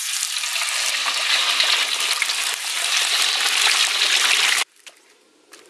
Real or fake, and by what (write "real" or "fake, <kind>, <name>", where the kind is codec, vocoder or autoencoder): real